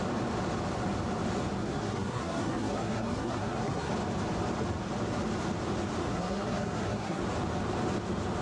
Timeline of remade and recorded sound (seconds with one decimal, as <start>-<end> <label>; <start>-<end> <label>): 0.0-1.6 recorded; 1.6-3.9 remade; 3.9-6.0 recorded; 6.0-7.2 remade; 7.2-8.4 recorded